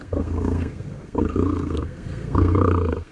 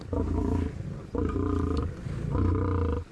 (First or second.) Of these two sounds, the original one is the second